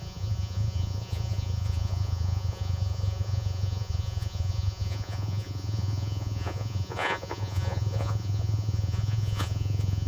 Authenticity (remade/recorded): remade